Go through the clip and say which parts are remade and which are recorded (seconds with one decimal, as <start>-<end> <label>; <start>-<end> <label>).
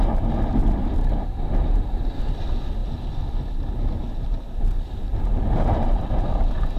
0.0-0.8 recorded; 0.8-2.2 remade; 2.2-5.1 recorded; 5.1-6.8 remade